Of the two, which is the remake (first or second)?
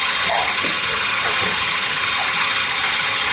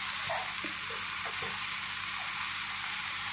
first